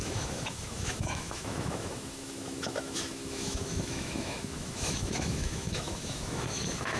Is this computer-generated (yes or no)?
yes